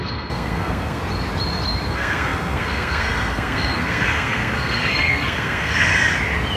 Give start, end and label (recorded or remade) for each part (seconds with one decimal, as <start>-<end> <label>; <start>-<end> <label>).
0.0-1.0 remade; 1.0-1.9 recorded; 1.9-5.9 remade; 5.9-6.6 recorded